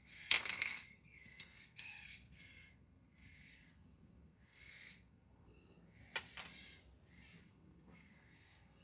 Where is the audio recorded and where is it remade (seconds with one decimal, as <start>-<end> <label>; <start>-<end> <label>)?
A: 0.0-6.0 remade; 6.0-7.4 recorded; 7.4-8.8 remade